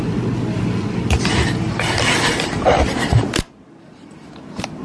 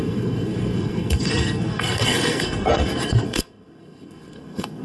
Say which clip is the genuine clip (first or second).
first